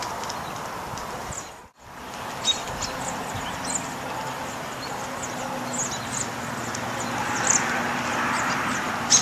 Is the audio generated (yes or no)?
no